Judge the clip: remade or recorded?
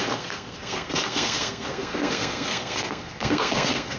remade